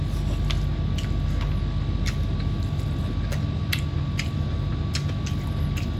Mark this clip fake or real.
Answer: real